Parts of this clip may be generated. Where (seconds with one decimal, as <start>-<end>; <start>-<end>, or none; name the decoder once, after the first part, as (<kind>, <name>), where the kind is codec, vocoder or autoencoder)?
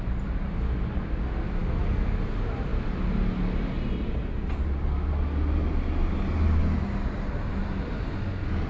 none